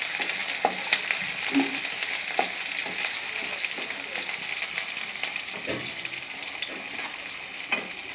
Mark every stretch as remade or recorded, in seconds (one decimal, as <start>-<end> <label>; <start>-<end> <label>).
0.0-8.1 recorded

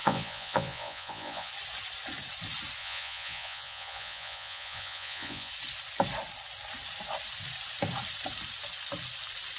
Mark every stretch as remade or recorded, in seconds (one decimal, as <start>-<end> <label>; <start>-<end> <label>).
0.0-1.5 remade; 1.5-2.8 recorded; 2.8-5.5 remade; 5.5-9.6 recorded

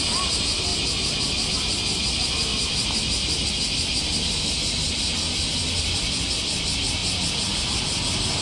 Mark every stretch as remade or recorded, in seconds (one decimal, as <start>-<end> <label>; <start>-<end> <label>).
0.0-8.4 recorded

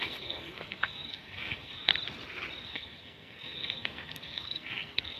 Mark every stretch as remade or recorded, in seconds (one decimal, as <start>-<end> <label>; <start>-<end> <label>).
0.0-1.9 remade; 1.9-2.6 recorded; 2.6-5.2 remade

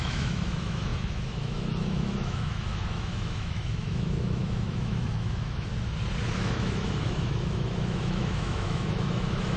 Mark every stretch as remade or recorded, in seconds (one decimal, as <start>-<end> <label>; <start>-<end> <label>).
0.0-5.7 remade; 5.7-6.2 recorded; 6.2-9.6 remade

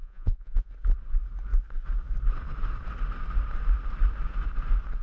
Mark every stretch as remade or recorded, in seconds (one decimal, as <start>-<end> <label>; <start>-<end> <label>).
0.0-0.7 remade; 0.7-5.0 recorded

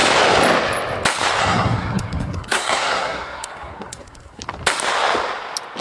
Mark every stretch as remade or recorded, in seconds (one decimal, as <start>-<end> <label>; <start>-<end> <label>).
0.0-1.4 recorded; 1.4-4.4 remade; 4.4-5.8 recorded